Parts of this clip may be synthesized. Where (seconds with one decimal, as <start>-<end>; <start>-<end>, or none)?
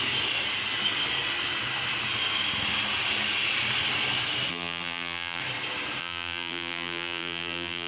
4.5-5.4; 6.0-7.9